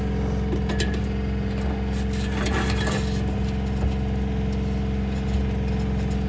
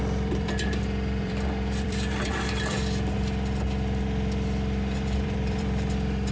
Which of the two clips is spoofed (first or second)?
second